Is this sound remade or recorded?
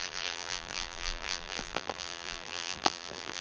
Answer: remade